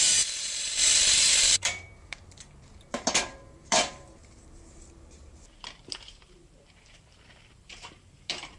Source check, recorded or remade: remade